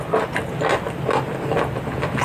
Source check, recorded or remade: recorded